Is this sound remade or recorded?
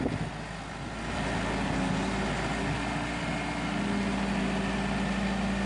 recorded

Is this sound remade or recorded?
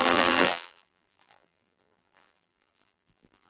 remade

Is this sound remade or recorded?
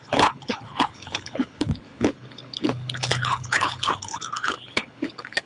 remade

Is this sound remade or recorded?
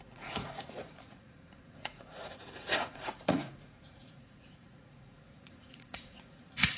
remade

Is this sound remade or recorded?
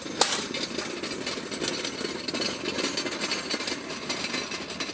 recorded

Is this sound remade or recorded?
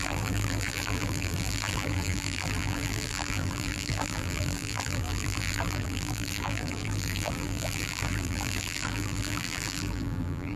remade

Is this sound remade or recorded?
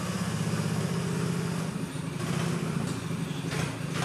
recorded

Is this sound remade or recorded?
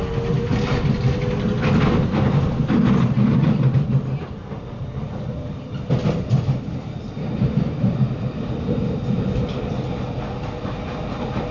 recorded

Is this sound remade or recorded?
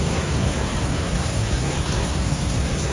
remade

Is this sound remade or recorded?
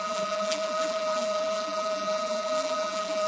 remade